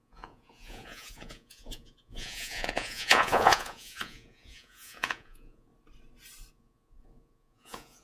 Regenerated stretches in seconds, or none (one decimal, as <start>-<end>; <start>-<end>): 0.0-5.7; 6.5-8.0